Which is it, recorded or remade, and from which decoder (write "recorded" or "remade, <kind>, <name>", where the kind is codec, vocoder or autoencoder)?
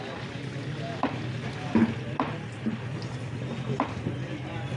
recorded